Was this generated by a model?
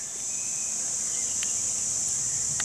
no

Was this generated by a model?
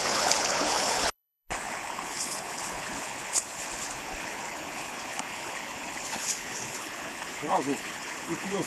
yes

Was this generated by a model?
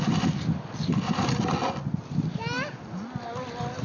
no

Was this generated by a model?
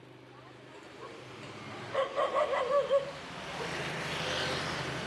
no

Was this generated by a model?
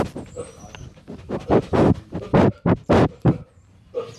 yes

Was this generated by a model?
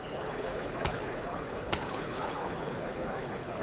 yes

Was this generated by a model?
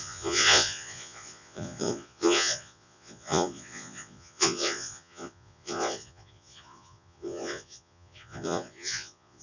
yes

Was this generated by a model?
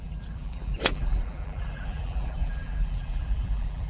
yes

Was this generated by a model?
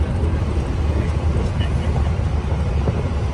no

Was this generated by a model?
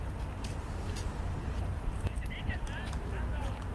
yes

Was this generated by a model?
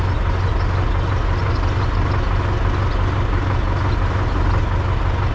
no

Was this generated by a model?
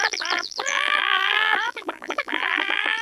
yes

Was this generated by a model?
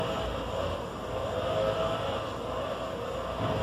no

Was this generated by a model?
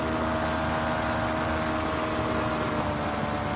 no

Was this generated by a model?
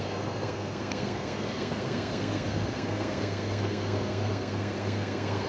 yes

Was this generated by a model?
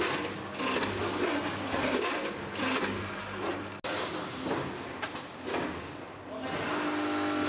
no